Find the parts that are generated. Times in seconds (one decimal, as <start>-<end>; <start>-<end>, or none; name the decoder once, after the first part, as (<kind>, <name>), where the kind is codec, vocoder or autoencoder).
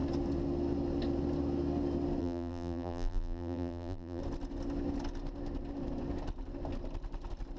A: 2.2-4.2 (vocoder, BigVGAN v2)